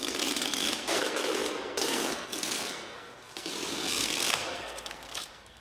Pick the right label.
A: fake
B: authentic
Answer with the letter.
A